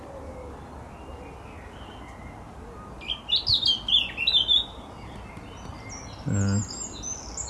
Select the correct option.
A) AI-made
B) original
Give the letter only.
B